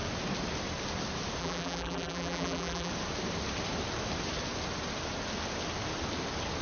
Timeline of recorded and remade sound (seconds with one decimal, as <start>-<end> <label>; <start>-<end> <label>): 0.0-1.4 recorded; 1.4-2.9 remade; 2.9-6.6 recorded